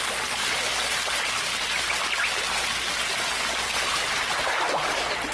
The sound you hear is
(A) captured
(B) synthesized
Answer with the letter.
A